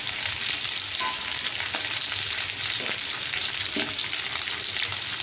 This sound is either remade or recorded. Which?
recorded